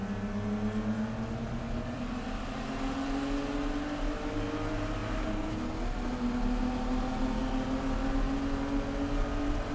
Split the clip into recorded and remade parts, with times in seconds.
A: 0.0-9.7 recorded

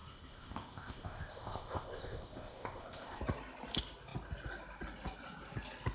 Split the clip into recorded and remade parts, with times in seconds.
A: 0.0-3.2 remade; 3.2-5.9 recorded

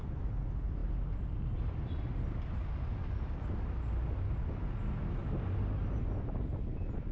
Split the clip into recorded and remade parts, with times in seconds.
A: 0.0-7.1 recorded

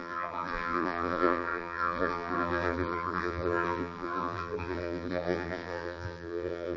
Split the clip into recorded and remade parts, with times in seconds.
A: 0.0-6.8 remade

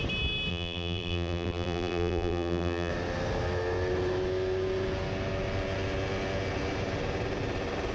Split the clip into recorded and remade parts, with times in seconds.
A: 0.0-0.5 recorded; 0.5-2.9 remade; 2.9-7.9 recorded

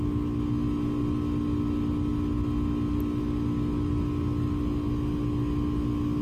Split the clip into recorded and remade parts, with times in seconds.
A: 0.0-6.2 recorded

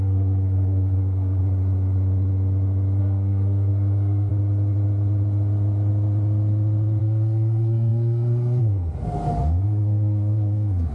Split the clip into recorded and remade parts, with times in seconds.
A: 0.0-1.4 remade; 1.4-3.0 recorded; 3.0-4.3 remade; 4.3-7.0 recorded; 7.0-10.9 remade

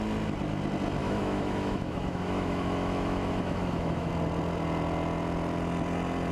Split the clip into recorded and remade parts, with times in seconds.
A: 0.0-1.0 recorded; 1.0-4.1 remade; 4.1-6.3 recorded